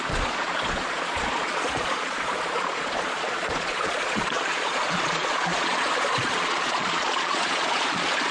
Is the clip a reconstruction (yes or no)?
yes